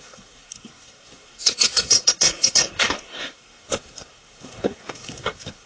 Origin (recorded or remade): remade